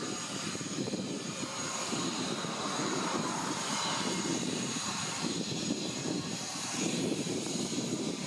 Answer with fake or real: fake